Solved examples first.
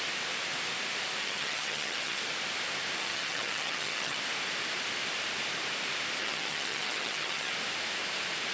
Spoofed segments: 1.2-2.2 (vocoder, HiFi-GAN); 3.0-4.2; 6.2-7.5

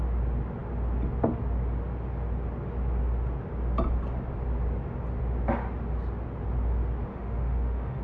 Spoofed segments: 7.1-8.0 (autoencoder, DAC-VAE)

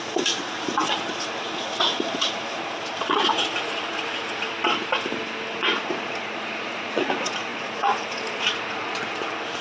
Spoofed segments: 0.0-4.5 (vocoder, Vocos); 5.5-9.6